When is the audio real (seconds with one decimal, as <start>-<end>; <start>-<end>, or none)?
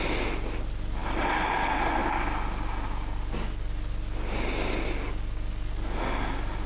0.0-6.7